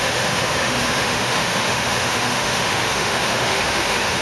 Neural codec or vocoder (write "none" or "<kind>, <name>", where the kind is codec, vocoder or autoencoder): autoencoder, DAC-VAE